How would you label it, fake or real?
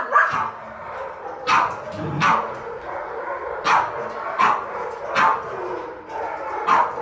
real